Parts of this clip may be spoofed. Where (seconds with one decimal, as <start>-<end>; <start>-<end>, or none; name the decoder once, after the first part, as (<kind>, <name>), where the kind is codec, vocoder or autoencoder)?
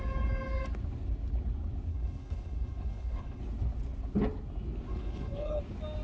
1.9-3.4 (codec, HILCodec); 4.9-5.6